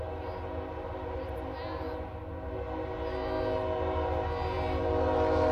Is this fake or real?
real